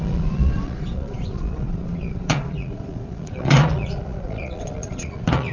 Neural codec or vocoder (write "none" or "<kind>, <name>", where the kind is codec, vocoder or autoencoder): vocoder, Vocos